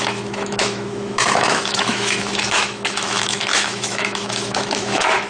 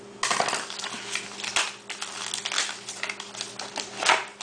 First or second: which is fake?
first